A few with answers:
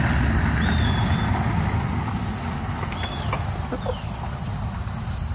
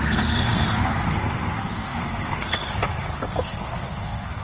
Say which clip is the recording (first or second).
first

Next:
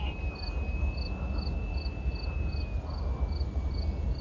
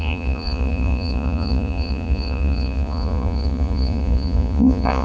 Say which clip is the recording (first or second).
first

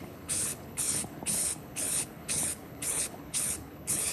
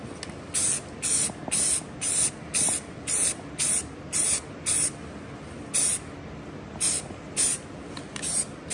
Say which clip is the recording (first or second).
second